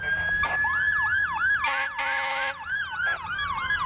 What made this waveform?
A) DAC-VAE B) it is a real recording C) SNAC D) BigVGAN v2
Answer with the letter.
B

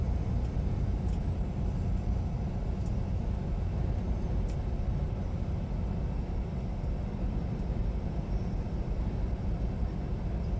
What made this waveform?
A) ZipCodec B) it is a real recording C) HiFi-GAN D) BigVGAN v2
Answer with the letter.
B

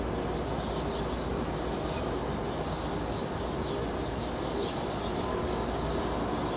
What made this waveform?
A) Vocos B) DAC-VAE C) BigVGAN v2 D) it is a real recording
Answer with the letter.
D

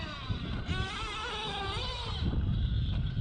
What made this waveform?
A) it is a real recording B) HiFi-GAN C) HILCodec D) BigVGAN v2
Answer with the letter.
A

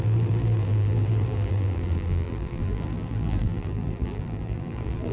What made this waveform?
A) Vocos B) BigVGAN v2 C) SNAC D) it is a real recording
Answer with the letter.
B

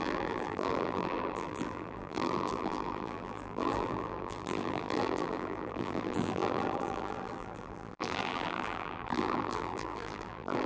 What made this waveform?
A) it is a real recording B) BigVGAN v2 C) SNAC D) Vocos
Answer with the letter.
B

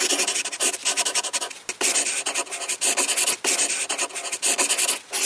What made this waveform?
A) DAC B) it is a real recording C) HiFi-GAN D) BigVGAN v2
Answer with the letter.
B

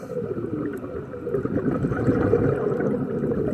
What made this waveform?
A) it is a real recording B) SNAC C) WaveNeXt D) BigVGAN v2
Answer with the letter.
D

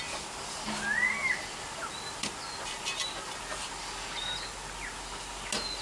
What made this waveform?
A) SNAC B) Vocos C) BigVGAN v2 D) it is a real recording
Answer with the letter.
D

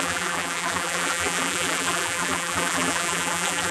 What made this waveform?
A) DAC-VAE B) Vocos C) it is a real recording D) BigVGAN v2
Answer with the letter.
D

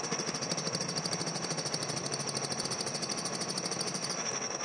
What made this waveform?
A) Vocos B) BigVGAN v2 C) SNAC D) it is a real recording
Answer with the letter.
D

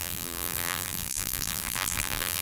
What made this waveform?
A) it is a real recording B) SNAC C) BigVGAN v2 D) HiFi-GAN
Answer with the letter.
C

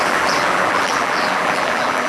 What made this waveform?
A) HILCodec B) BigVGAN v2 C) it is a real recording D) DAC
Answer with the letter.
B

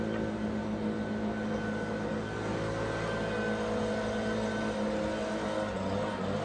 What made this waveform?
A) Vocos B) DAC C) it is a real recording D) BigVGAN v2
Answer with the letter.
C